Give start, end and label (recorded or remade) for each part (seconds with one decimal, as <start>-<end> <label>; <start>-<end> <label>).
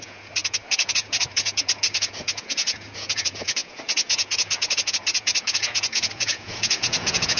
0.0-7.4 remade